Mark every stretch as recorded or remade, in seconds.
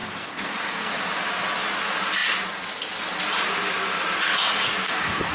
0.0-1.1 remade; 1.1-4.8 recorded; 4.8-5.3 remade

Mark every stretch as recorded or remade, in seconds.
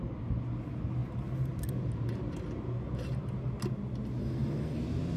0.0-4.2 recorded; 4.2-4.8 remade; 4.8-5.2 recorded